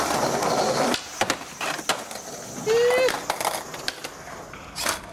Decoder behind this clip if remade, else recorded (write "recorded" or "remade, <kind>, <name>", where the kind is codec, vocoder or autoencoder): recorded